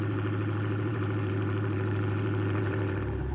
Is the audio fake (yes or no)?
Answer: yes